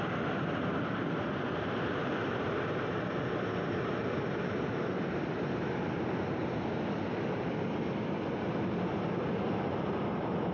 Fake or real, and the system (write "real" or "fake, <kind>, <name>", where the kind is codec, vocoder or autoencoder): fake, vocoder, BigVGAN v2